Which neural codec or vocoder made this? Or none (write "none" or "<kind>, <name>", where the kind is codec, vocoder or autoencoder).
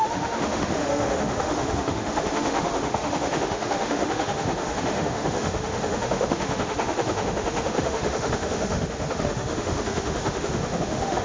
autoencoder, DAC-VAE